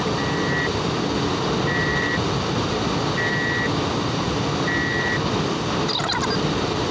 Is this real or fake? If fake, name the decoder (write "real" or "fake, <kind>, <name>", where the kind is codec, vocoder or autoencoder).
real